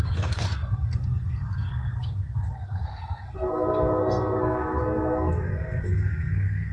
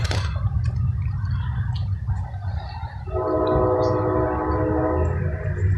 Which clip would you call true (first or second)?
second